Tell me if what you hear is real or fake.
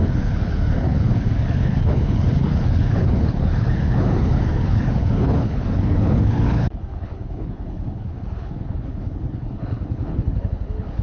fake